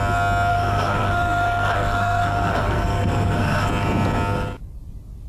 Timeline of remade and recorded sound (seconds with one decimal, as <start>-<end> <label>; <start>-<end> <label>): 0.0-0.5 recorded; 0.5-3.7 remade; 3.7-5.3 recorded